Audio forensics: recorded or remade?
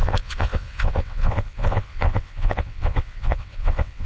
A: remade